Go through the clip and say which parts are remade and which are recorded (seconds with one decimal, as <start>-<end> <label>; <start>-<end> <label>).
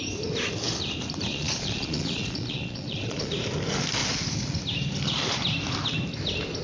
0.0-1.3 recorded; 1.3-3.3 remade; 3.3-6.6 recorded